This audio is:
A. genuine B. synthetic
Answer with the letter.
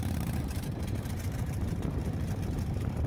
B